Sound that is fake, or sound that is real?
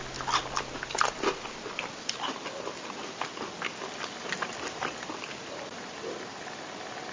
real